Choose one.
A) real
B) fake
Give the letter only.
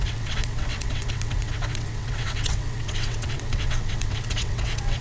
B